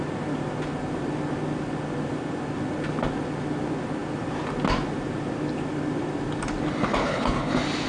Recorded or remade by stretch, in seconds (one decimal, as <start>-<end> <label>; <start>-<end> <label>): 0.0-7.0 recorded; 7.0-7.5 remade; 7.5-7.9 recorded